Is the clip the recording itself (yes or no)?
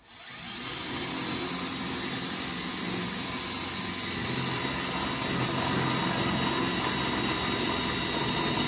yes